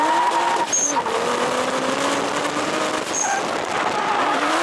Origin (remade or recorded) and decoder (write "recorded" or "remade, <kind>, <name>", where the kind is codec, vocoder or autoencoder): recorded